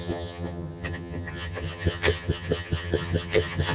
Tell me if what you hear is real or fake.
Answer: fake